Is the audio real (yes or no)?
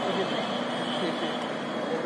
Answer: yes